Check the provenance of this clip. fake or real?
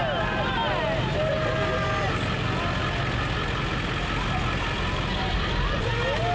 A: real